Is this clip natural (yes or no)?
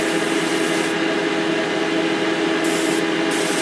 yes